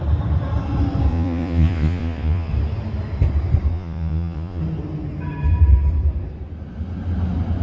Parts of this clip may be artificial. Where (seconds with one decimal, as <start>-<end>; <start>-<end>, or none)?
1.1-2.5; 3.7-4.6

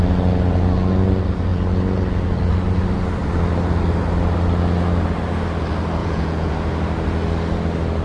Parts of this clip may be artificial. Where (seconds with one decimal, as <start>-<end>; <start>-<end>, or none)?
6.0-6.5

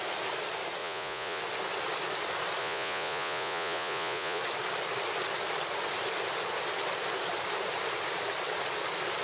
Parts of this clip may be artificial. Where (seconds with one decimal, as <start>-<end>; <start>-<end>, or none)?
0.8-1.4; 2.6-4.4